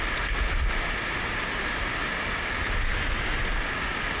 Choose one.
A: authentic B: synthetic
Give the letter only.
A